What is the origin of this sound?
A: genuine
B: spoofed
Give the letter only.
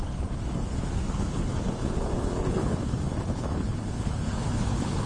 B